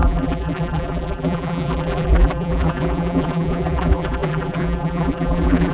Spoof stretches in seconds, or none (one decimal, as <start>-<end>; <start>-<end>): 0.0-5.7